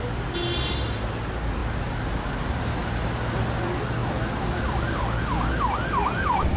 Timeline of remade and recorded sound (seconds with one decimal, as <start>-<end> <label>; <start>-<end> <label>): 0.0-6.6 recorded